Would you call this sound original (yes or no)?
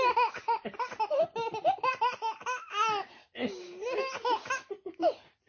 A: yes